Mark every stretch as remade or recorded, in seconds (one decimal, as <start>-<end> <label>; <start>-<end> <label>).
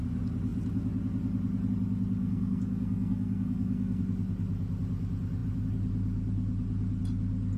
0.0-2.2 recorded; 2.2-4.0 remade; 4.0-7.6 recorded